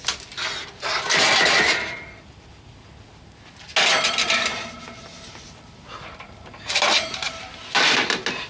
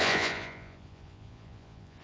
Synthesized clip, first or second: second